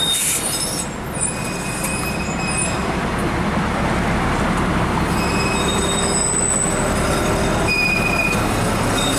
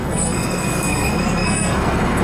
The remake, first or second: second